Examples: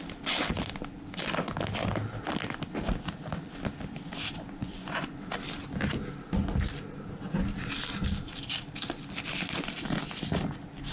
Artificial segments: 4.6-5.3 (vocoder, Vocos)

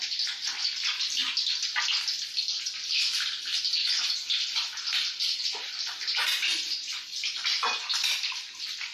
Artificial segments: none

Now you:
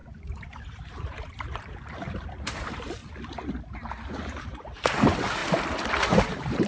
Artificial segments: 0.0-3.0 (vocoder, BigVGAN v2); 4.1-5.4; 6.1-6.7

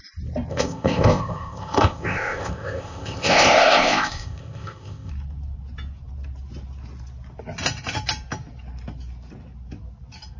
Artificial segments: 0.5-5.1 (codec, ZipCodec)